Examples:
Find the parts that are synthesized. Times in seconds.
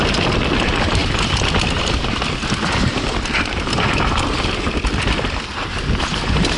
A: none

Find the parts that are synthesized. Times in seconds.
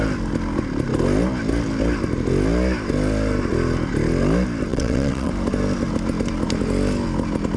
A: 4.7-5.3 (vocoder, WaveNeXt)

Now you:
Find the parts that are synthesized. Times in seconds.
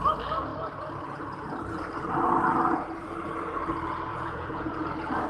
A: 4.1-4.8 (vocoder, Vocos)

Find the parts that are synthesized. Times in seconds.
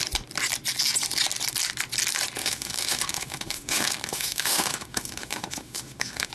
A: 2.4-6.3 (autoencoder, DAC-VAE)